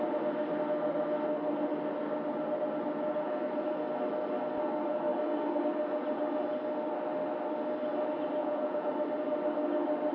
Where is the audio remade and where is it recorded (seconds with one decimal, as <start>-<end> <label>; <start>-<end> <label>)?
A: 0.0-8.4 recorded; 8.4-8.9 remade; 8.9-10.1 recorded